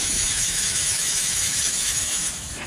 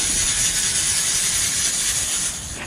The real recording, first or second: second